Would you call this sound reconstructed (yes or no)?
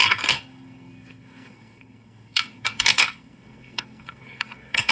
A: yes